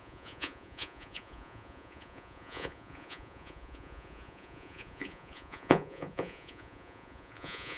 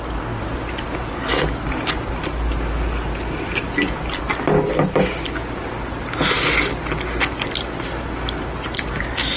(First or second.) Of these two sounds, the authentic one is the second